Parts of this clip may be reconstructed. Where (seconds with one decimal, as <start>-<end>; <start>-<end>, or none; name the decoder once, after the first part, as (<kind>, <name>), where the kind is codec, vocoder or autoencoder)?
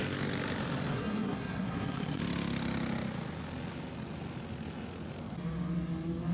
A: 0.9-2.2 (codec, SNAC)